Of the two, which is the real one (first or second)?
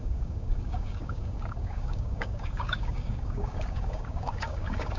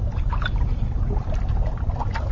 second